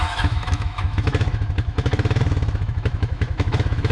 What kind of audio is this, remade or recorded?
remade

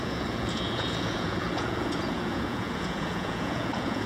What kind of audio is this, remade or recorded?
remade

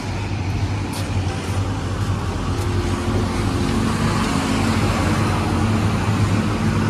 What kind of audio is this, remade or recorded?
recorded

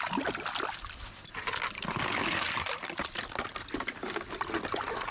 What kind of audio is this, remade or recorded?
recorded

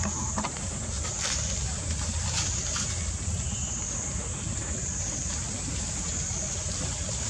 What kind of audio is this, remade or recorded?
recorded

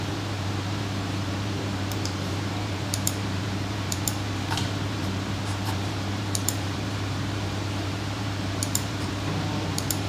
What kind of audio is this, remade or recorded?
remade